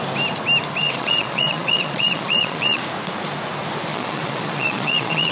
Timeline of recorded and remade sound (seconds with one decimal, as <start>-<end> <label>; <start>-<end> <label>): 0.0-0.8 recorded; 0.8-2.8 remade; 2.8-3.9 recorded; 3.9-5.3 remade